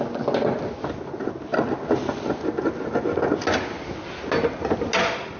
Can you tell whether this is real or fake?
real